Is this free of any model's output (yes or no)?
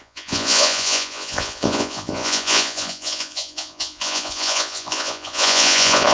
no